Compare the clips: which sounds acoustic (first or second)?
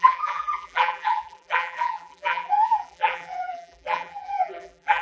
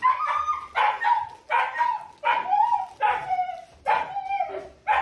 second